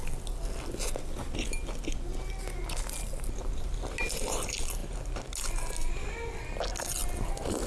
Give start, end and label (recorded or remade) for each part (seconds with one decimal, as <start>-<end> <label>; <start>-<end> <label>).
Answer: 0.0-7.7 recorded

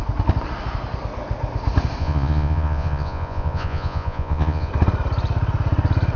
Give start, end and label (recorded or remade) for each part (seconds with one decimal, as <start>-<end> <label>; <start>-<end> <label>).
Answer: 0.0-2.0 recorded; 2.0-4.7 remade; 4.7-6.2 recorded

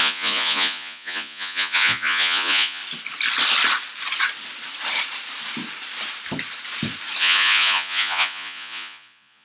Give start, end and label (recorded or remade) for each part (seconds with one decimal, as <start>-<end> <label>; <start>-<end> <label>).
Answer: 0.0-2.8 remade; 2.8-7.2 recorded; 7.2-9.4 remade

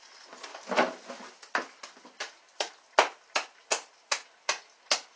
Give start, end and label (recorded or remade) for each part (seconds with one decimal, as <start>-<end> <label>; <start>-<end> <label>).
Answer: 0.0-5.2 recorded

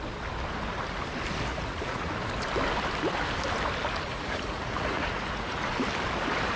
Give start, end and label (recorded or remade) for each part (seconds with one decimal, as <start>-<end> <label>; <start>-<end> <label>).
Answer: 0.0-1.5 recorded; 1.5-2.1 remade; 2.1-4.1 recorded; 4.1-5.7 remade; 5.7-6.6 recorded